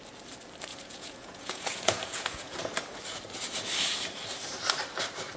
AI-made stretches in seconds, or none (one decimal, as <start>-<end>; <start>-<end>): 0.7-2.6